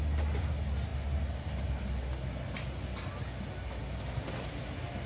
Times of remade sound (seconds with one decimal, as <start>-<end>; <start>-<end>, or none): none